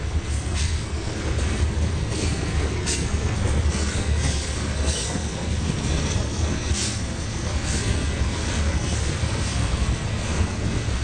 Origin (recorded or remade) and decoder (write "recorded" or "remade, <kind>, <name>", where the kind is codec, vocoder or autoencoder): remade, codec, SNAC